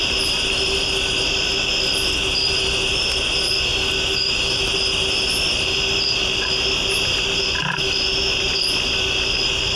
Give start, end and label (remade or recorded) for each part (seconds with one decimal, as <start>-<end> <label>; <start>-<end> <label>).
0.0-9.8 recorded